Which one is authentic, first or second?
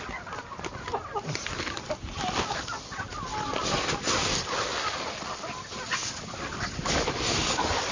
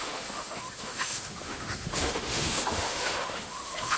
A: first